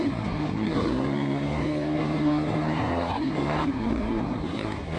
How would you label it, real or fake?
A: fake